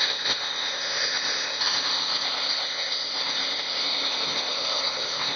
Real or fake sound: fake